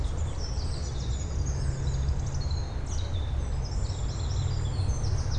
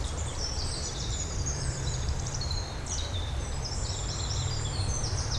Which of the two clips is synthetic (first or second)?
second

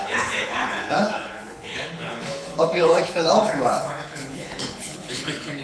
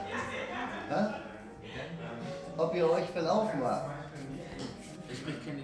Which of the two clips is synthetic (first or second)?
first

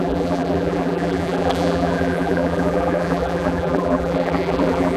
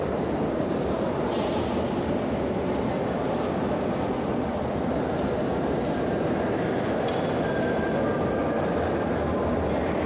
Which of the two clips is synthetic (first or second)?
first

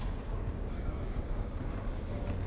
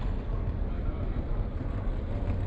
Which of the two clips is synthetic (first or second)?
first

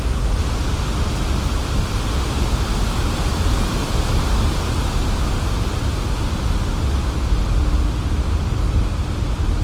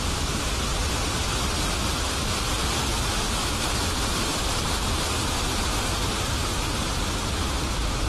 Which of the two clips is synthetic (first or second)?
second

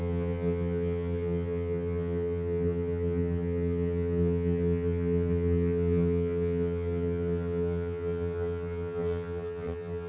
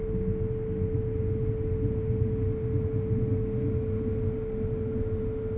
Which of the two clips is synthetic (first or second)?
first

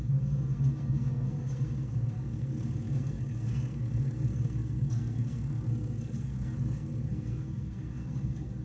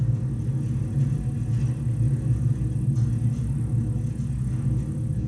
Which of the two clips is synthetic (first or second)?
first